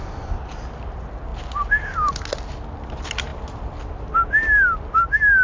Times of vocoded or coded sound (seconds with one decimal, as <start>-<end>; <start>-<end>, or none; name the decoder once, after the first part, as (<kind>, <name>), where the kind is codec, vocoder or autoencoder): none